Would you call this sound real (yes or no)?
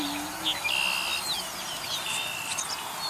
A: yes